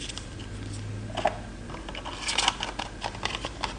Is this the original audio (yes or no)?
yes